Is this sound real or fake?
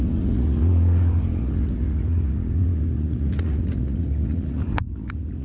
fake